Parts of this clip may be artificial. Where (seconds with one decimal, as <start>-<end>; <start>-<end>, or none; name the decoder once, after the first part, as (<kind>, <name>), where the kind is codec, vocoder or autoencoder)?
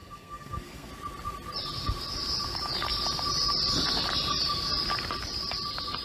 0.0-0.9 (codec, SNAC)